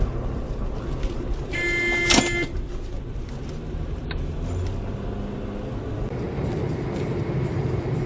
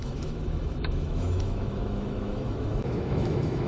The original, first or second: first